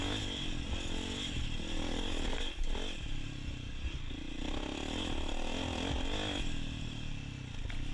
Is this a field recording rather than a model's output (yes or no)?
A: yes